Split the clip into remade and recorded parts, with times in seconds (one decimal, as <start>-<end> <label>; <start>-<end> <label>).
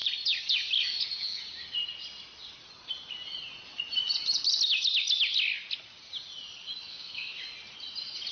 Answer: 0.0-6.9 recorded; 6.9-7.4 remade; 7.4-8.3 recorded